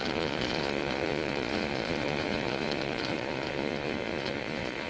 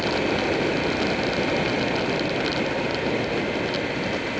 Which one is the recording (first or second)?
second